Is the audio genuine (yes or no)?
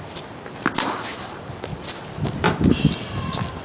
yes